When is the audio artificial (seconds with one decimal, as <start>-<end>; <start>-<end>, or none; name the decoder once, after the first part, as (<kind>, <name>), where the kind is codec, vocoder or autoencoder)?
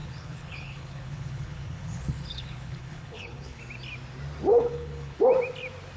0.0-3.6 (codec, HILCodec); 4.5-5.2